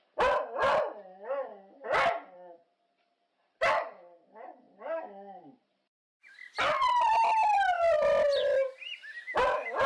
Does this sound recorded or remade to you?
recorded